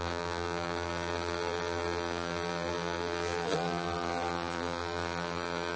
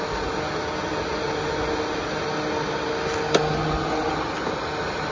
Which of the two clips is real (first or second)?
second